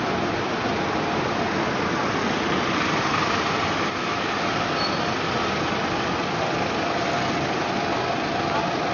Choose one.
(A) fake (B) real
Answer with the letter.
B